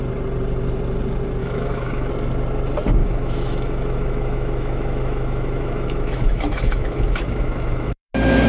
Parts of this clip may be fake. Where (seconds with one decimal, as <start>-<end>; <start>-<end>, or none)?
1.4-2.1; 3.0-8.1